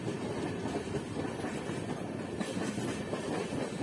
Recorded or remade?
recorded